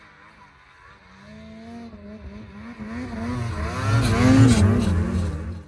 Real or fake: real